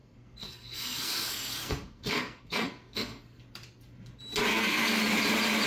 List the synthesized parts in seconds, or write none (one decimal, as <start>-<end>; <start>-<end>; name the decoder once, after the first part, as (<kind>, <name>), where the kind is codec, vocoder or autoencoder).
0.0-3.4 (codec, SNAC); 4.5-5.0